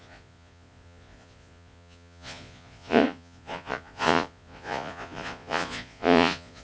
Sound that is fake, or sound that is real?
fake